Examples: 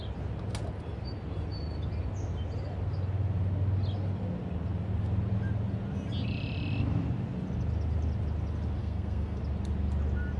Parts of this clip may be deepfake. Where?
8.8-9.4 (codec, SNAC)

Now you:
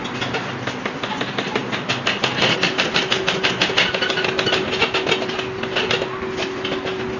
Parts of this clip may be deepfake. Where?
none

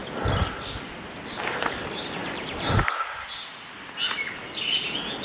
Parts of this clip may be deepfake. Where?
none